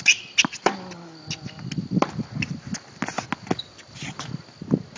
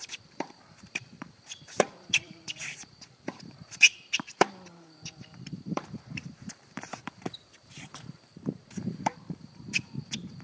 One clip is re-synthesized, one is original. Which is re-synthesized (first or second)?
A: second